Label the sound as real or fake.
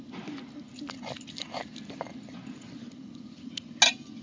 real